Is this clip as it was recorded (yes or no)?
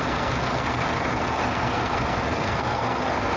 no